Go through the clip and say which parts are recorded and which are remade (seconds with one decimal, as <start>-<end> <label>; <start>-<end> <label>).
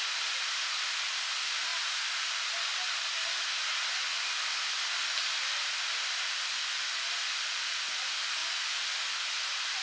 0.0-9.8 recorded